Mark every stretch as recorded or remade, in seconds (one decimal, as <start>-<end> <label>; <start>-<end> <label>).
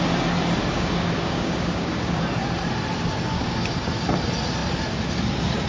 0.0-0.6 recorded; 0.6-2.2 remade; 2.2-3.3 recorded; 3.3-3.9 remade; 3.9-5.7 recorded